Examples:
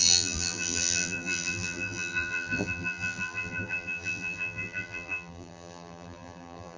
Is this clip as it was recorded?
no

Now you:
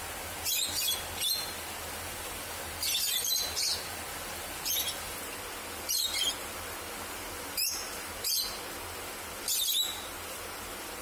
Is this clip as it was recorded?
yes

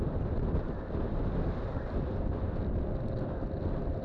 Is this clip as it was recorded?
yes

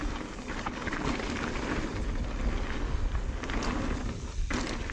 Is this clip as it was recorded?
yes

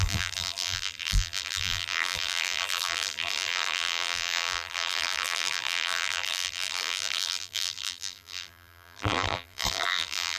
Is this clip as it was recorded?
no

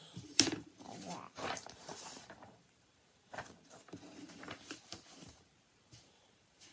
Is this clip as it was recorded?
no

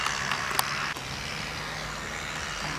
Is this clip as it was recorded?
yes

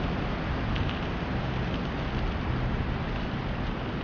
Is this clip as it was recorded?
yes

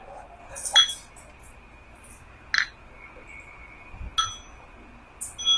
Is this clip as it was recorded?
yes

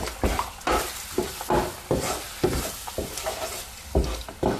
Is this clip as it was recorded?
yes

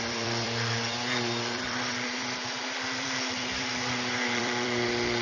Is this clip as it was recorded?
no